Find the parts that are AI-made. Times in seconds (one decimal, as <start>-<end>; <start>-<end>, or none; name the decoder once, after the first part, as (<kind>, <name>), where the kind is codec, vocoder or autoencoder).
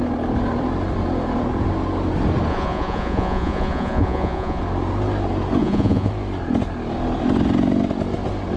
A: 2.5-4.6 (vocoder, Vocos); 5.6-6.1